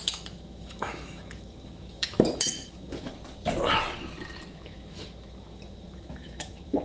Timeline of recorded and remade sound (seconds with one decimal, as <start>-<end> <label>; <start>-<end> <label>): 0.0-3.1 remade; 3.1-4.5 recorded; 4.5-6.8 remade